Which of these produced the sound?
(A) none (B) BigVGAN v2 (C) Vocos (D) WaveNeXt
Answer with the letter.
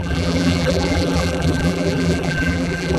B